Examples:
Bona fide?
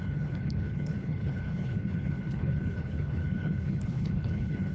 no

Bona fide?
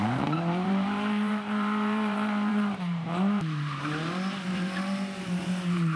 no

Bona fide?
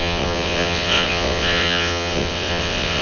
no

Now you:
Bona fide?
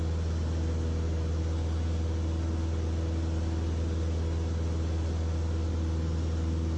yes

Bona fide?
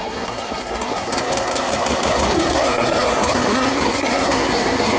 no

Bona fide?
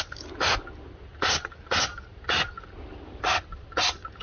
yes